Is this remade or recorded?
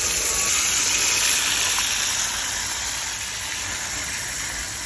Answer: recorded